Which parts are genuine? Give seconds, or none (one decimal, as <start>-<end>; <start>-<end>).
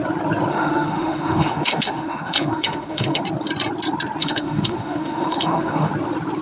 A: 0.0-0.5; 3.2-4.2; 5.9-6.4